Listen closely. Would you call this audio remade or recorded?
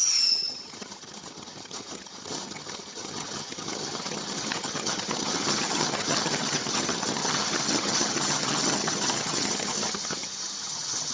remade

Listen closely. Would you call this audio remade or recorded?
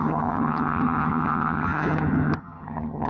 remade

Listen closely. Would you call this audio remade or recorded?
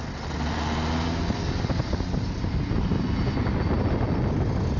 recorded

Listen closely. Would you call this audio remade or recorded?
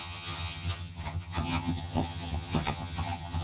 remade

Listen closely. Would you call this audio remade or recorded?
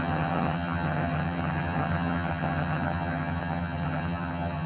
remade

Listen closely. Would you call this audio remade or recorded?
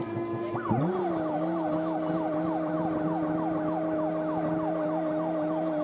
recorded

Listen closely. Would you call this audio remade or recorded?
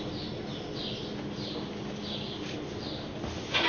recorded